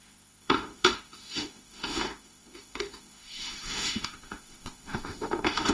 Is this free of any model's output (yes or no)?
no